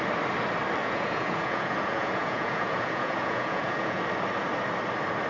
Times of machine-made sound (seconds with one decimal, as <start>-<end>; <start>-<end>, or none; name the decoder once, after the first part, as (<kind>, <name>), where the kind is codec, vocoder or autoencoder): 0.8-4.0 (vocoder, Vocos)